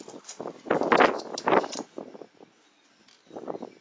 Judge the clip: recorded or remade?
recorded